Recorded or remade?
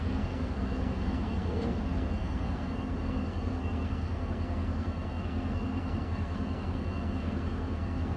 remade